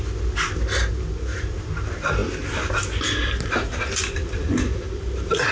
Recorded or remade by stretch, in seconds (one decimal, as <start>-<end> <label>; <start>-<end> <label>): 0.0-5.5 recorded